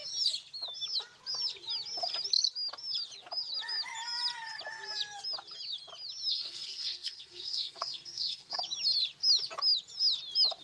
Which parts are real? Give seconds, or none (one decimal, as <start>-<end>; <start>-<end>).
0.0-6.3; 8.6-10.6